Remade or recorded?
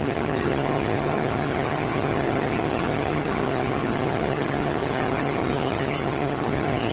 remade